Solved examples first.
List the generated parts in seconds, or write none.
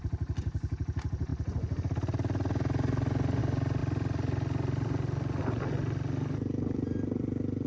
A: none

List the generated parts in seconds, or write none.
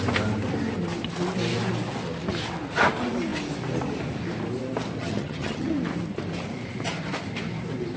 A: 5.0-5.7 (vocoder, HiFi-GAN)